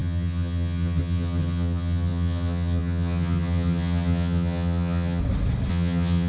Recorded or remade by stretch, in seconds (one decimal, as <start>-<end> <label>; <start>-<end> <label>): 0.0-5.2 remade; 5.2-5.7 recorded; 5.7-6.3 remade